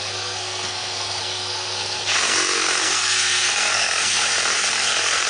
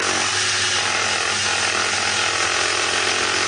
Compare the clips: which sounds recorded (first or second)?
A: second